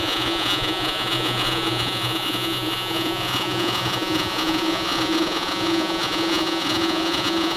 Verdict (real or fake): fake